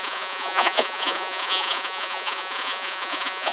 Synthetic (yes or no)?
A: yes